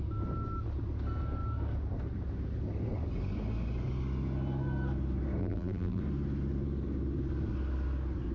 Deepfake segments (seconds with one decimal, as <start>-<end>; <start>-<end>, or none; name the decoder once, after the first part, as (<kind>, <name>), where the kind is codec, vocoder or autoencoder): 5.4-6.0 (vocoder, BigVGAN v2)